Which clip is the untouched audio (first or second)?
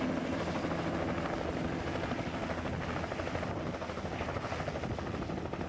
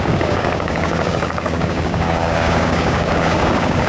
first